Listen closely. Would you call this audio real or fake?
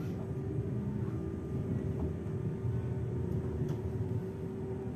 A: real